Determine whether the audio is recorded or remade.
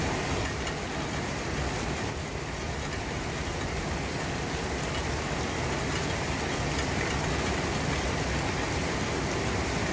recorded